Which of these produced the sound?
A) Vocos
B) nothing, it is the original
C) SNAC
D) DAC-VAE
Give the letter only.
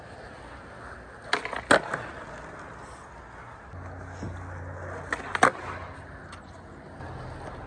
B